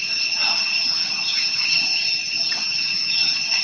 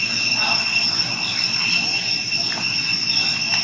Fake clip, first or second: first